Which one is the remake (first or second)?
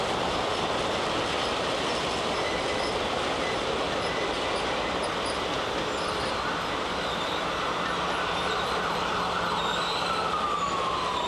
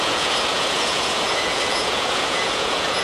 second